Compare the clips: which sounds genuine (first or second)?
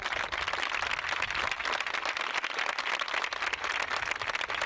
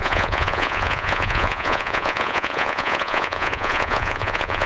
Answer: first